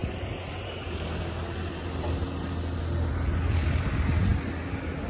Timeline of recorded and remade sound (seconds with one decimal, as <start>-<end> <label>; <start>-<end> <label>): 0.0-5.1 recorded